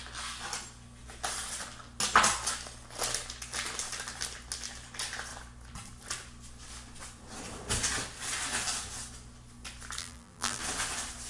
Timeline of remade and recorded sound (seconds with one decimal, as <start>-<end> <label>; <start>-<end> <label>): 0.0-10.0 recorded; 10.0-10.6 remade; 10.6-11.3 recorded

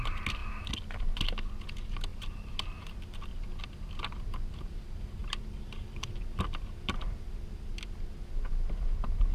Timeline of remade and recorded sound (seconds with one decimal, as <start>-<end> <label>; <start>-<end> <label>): 0.0-2.1 recorded; 2.1-3.3 remade; 3.3-5.2 recorded; 5.2-7.7 remade; 7.7-9.3 recorded

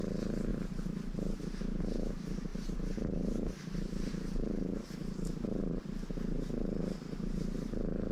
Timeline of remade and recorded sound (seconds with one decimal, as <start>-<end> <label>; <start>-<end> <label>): 0.0-2.5 recorded; 2.5-5.8 remade; 5.8-8.1 recorded

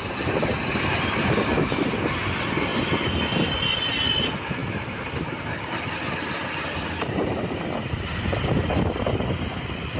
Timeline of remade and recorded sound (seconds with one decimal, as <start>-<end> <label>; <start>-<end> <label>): 0.0-4.6 recorded; 4.6-5.8 remade; 5.8-10.0 recorded

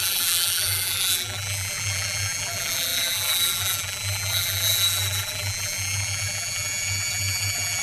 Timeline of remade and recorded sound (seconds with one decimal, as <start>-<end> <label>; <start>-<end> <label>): 0.0-7.8 remade

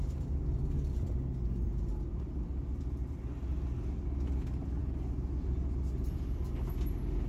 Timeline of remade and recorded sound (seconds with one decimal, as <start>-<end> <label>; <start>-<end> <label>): 0.0-7.3 recorded